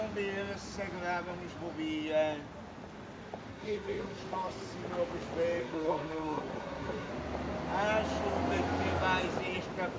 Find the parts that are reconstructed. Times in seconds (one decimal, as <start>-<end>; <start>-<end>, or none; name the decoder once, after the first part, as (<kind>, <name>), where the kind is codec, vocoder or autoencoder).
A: 3.5-4.2 (codec, SNAC); 5.6-7.1